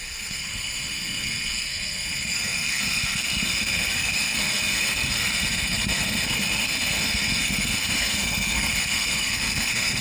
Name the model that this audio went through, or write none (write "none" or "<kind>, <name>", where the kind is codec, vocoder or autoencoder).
codec, SNAC